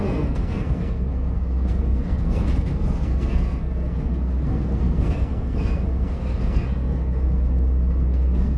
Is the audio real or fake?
fake